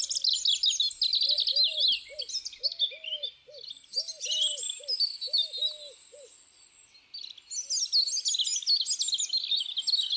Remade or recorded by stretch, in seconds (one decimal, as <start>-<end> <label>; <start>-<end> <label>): 0.0-10.2 recorded